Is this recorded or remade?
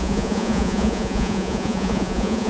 remade